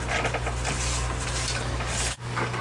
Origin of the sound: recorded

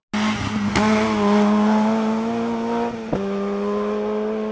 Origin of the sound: recorded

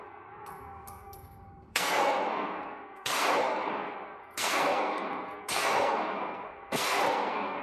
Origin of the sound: remade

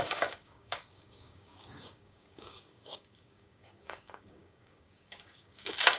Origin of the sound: remade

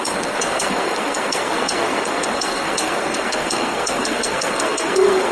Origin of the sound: remade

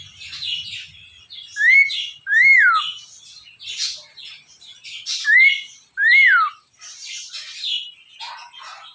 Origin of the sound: recorded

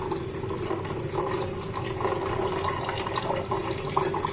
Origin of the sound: recorded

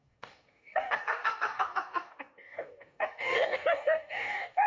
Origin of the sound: remade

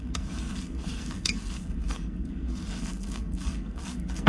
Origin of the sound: remade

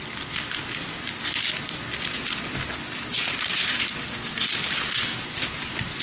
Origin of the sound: recorded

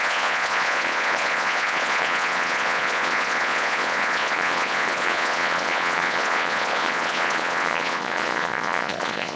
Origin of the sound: remade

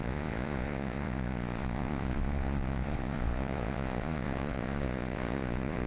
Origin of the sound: remade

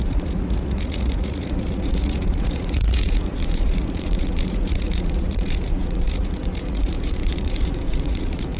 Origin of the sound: remade